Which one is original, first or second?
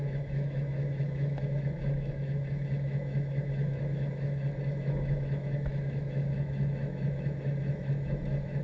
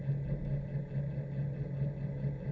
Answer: second